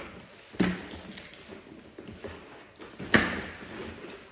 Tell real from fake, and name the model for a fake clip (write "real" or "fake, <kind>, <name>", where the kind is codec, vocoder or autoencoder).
real